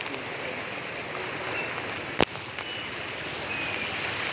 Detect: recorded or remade recorded